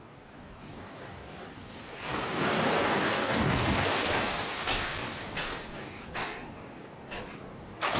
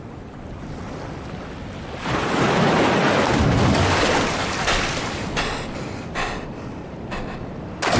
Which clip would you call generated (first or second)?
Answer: first